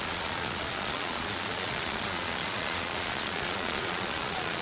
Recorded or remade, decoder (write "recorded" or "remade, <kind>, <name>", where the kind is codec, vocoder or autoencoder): remade, vocoder, Vocos